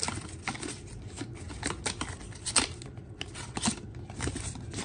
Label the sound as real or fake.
real